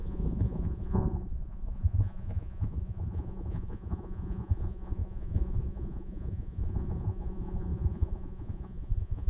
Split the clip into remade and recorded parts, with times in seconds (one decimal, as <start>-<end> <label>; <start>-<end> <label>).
0.0-9.3 remade